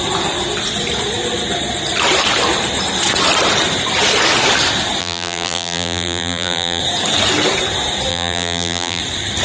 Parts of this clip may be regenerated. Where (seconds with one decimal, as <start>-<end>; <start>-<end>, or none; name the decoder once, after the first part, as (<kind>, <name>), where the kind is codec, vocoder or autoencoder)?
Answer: 5.0-6.8 (vocoder, BigVGAN v2); 8.1-9.0